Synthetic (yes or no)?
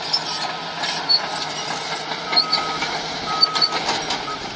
no